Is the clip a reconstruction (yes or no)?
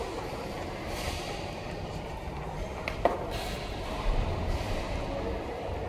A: no